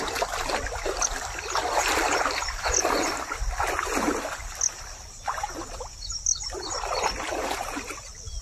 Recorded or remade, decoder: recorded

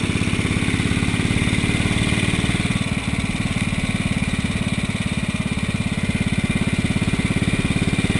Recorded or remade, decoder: recorded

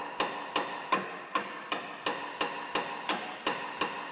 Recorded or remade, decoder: recorded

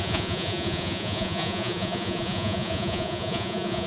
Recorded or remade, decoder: remade, vocoder, Vocos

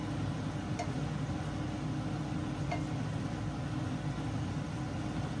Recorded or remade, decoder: recorded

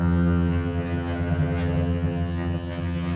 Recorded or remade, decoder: remade, vocoder, HiFi-GAN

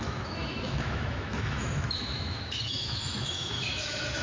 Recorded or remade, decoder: remade, autoencoder, DAC-VAE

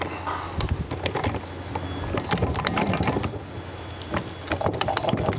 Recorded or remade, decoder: recorded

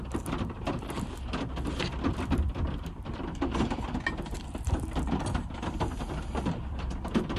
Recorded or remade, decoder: remade, vocoder, BigVGAN v2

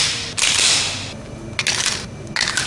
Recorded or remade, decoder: recorded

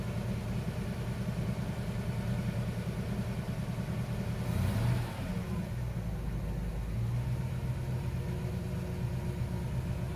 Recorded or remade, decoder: recorded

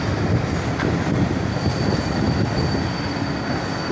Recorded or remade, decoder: recorded